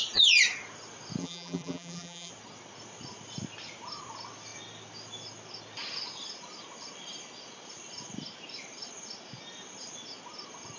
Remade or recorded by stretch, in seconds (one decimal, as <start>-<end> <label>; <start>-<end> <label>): 0.0-1.2 recorded; 1.2-2.3 remade; 2.3-10.8 recorded

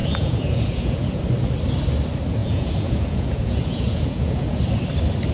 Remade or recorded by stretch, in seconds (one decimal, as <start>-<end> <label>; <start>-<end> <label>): 0.0-1.2 remade; 1.2-2.4 recorded; 2.4-4.6 remade; 4.6-5.3 recorded

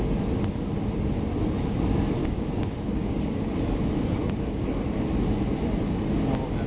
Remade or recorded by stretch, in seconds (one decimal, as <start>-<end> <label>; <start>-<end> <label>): 0.0-2.2 recorded; 2.2-3.4 remade; 3.4-6.7 recorded

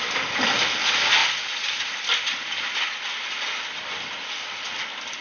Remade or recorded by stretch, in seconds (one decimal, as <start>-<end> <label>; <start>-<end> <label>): 0.0-5.2 recorded

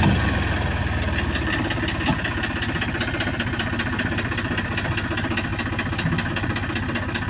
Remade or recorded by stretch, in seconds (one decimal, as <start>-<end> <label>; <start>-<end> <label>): 0.0-7.3 recorded

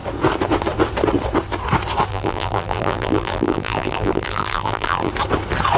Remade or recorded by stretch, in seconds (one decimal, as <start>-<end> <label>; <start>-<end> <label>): 0.0-2.1 recorded; 2.1-5.1 remade; 5.1-5.8 recorded

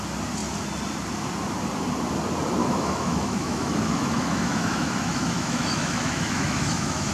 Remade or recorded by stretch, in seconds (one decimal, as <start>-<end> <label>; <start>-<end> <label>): 0.0-2.6 recorded; 2.6-7.1 remade

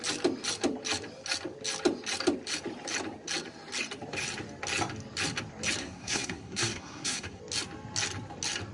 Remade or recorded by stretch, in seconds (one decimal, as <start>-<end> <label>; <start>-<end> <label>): 0.0-5.8 recorded; 5.8-7.4 remade; 7.4-8.7 recorded